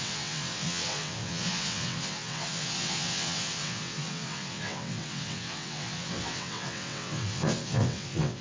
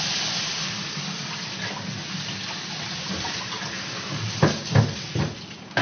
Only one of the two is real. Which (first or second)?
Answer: second